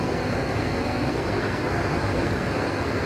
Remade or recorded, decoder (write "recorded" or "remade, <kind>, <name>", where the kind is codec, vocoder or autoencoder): remade, codec, SNAC